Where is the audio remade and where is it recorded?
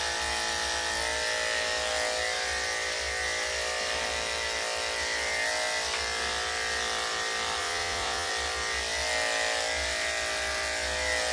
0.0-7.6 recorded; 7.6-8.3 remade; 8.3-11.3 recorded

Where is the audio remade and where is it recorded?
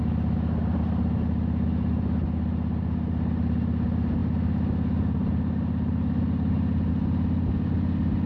0.0-8.3 recorded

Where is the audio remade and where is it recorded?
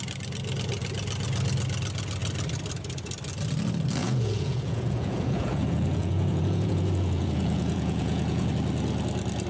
0.0-4.0 recorded; 4.0-8.5 remade; 8.5-9.5 recorded